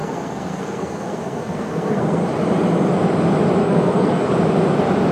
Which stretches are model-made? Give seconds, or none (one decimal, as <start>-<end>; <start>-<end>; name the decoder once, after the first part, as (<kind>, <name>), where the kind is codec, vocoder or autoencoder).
0.0-2.2 (codec, SNAC); 3.6-4.3